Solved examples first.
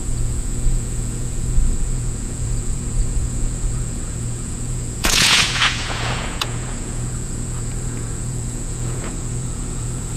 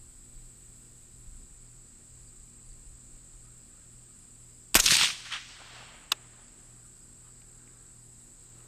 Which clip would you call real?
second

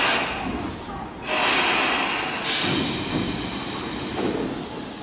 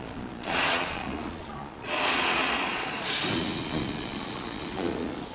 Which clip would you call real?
first